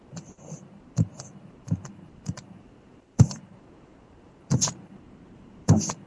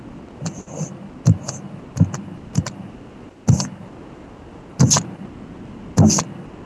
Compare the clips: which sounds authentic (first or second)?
second